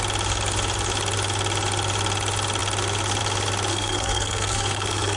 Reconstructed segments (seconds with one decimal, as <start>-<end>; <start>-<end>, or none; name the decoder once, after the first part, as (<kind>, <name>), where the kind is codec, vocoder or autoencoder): 3.7-5.2 (codec, SNAC)